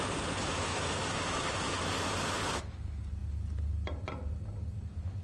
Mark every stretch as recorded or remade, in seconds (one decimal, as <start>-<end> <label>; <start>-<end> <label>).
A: 0.0-0.7 recorded; 0.7-1.9 remade; 1.9-5.2 recorded